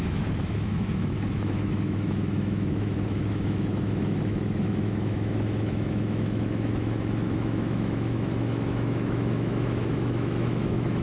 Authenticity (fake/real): fake